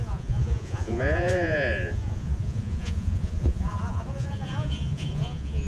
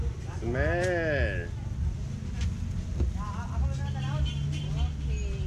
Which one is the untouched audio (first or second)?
second